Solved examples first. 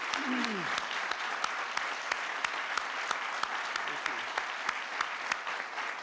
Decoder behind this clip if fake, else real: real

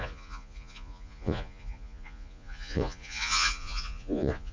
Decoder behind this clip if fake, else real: fake, vocoder, Vocos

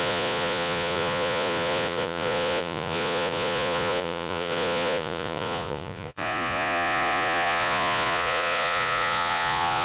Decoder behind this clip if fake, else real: fake, vocoder, Vocos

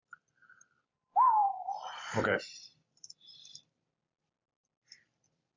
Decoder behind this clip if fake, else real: fake, vocoder, BigVGAN v2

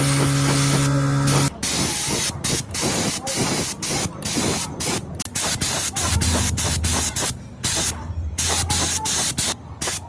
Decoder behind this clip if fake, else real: real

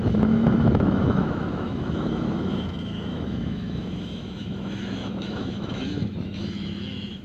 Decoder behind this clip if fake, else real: fake, autoencoder, DAC-VAE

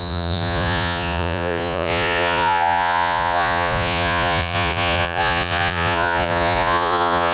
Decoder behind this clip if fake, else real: fake, vocoder, Vocos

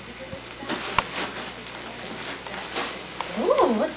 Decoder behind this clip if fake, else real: real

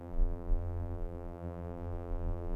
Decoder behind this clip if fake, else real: fake, vocoder, BigVGAN v2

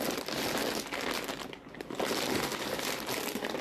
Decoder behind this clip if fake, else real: real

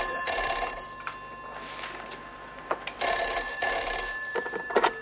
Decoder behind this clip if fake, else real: real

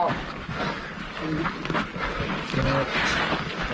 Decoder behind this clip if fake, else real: real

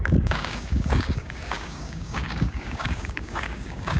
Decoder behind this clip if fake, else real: fake, codec, DAC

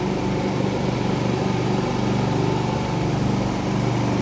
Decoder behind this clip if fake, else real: real